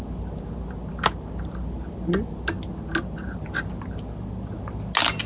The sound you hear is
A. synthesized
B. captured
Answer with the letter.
B